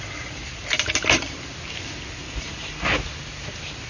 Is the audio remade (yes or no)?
no